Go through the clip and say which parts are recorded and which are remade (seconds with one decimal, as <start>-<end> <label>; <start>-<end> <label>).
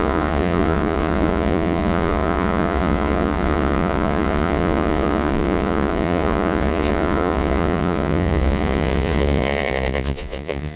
0.0-10.8 remade